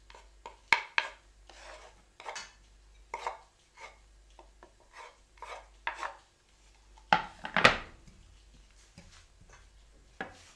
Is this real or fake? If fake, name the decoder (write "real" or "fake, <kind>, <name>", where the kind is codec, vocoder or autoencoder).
real